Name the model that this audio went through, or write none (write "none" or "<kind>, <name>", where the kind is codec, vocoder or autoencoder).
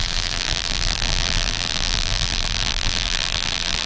vocoder, BigVGAN v2